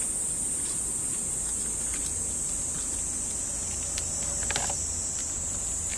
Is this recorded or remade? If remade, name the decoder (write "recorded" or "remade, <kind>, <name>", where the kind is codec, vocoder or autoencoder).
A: recorded